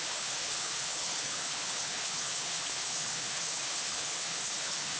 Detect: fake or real fake